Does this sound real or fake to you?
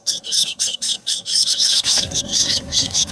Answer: fake